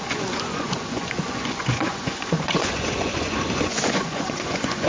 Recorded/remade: remade